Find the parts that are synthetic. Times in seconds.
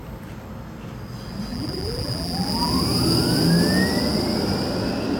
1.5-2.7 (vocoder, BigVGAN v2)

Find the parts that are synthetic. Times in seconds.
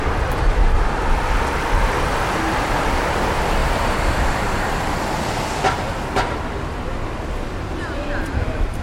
3.6-4.9 (vocoder, BigVGAN v2)